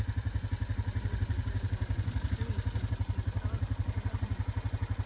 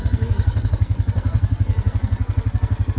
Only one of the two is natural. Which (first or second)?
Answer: first